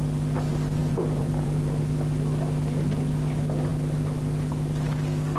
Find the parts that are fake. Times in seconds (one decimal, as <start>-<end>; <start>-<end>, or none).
0.8-1.8